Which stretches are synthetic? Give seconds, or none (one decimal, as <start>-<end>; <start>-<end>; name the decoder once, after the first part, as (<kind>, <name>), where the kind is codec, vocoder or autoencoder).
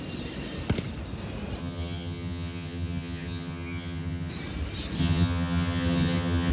1.6-4.3 (vocoder, HiFi-GAN); 5.0-6.5